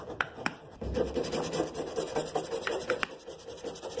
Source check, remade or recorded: recorded